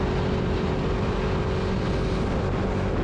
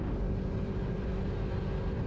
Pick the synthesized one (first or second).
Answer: second